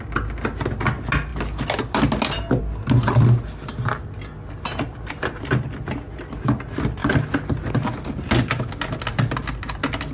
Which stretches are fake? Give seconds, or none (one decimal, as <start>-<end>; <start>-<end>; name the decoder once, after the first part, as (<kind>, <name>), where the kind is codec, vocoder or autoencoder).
none